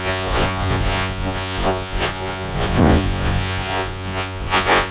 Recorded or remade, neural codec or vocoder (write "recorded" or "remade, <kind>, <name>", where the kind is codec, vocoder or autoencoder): remade, vocoder, Vocos